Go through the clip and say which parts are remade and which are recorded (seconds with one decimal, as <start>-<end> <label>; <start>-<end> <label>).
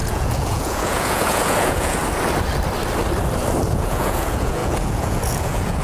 0.0-2.0 remade; 2.0-3.7 recorded; 3.7-5.8 remade